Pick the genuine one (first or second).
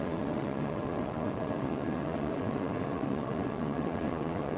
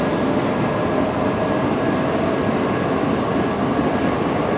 second